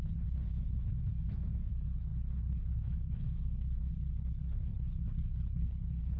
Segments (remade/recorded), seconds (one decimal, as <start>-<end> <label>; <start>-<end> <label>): 0.0-1.1 remade; 1.1-1.7 recorded; 1.7-6.2 remade